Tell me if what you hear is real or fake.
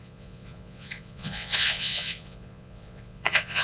fake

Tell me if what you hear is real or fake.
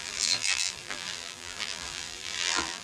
fake